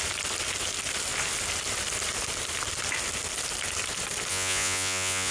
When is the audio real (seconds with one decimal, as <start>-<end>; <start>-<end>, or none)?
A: 0.0-4.3